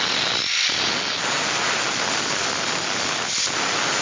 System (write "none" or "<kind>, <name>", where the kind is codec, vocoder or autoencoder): none